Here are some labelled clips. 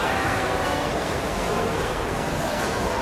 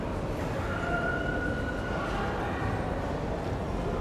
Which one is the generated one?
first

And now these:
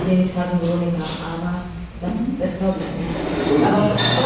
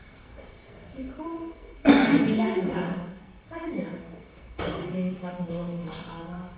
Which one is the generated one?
second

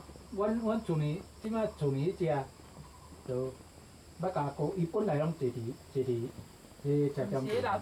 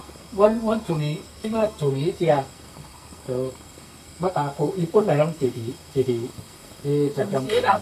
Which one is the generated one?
second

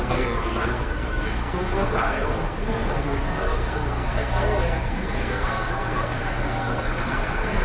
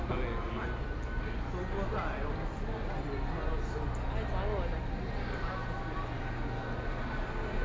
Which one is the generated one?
first